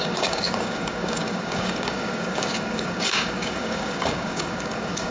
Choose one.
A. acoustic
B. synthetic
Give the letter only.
B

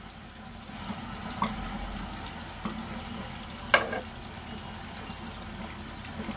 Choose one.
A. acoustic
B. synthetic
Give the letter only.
A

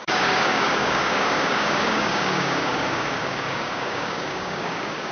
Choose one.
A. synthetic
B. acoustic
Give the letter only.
A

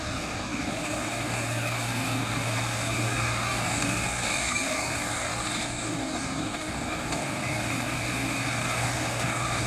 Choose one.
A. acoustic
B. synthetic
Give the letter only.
B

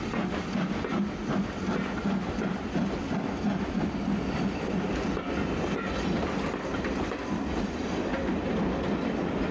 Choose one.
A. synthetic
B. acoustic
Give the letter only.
B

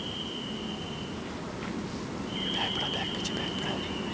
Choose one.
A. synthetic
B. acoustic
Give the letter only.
B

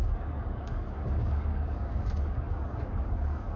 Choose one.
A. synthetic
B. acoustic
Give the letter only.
A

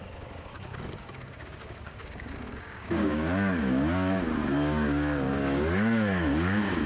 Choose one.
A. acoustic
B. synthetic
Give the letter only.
B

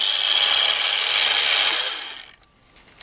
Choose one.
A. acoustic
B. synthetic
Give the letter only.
A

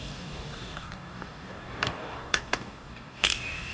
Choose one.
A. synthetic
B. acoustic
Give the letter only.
A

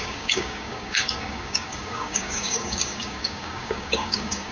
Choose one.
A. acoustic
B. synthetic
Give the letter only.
B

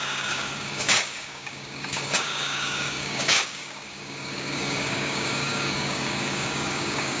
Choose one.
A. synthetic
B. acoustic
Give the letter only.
A